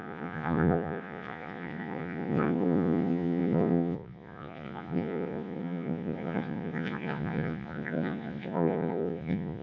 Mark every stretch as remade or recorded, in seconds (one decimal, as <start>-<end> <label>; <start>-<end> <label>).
0.0-9.6 remade